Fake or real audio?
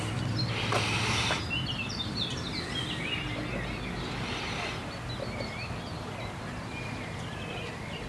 real